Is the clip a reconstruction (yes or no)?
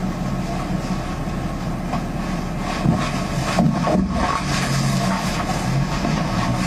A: no